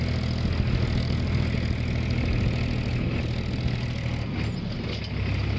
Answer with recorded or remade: recorded